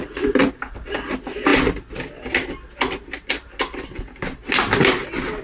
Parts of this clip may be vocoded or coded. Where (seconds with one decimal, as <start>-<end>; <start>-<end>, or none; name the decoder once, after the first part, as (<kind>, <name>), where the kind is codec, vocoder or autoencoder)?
none